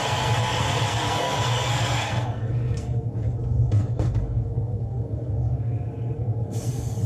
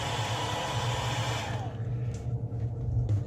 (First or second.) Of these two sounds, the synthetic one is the first